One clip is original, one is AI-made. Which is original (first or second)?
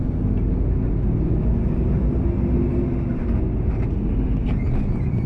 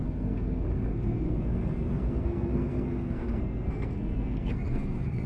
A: first